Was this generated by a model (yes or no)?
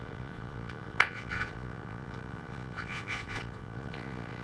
yes